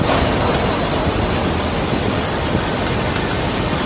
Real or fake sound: real